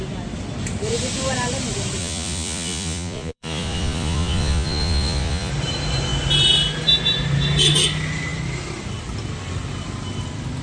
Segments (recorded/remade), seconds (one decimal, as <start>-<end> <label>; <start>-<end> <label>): 0.0-2.0 recorded; 2.0-5.5 remade; 5.5-10.6 recorded